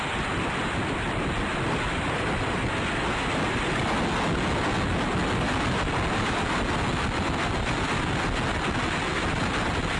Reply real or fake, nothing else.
real